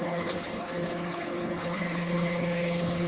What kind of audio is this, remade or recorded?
remade